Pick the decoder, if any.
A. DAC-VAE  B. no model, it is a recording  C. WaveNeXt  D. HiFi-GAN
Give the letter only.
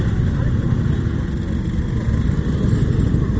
B